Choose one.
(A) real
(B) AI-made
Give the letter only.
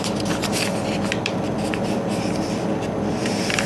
B